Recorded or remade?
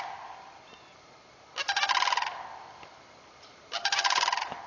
recorded